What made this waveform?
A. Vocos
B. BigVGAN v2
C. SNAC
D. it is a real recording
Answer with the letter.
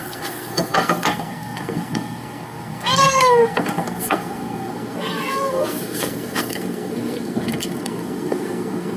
C